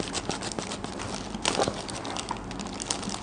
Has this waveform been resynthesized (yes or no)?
no